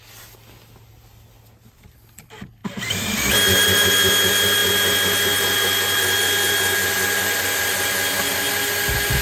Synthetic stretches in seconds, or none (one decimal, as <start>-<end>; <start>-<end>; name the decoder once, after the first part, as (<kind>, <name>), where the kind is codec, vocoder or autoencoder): 2.6-3.8 (vocoder, BigVGAN v2)